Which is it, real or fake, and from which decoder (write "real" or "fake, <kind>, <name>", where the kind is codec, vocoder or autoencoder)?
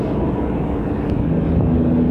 fake, codec, DAC